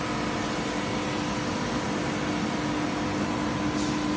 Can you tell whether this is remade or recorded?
recorded